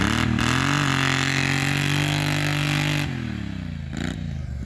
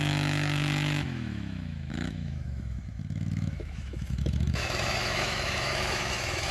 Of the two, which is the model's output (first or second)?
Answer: second